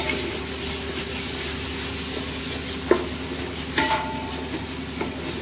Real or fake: real